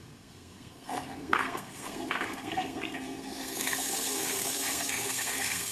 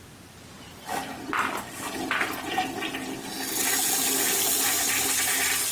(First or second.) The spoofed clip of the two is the first